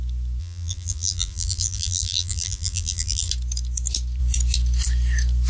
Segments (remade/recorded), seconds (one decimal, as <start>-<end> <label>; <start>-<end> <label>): 0.0-0.4 recorded; 0.4-3.3 remade; 3.3-5.5 recorded